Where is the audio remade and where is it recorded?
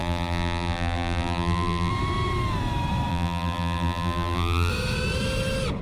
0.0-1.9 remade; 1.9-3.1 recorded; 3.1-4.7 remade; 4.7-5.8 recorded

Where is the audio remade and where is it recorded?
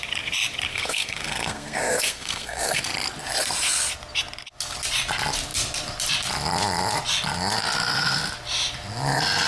0.0-0.7 recorded; 0.7-2.8 remade; 2.8-9.5 recorded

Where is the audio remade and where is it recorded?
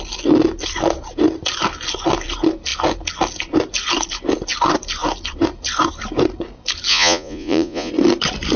0.0-6.9 recorded; 6.9-7.9 remade; 7.9-8.6 recorded